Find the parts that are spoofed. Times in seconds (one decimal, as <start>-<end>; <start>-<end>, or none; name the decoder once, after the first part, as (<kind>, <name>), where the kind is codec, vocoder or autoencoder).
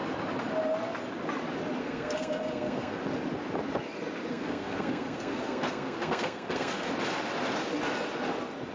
1.8-3.0 (codec, SNAC); 4.3-6.9